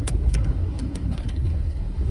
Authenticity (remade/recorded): remade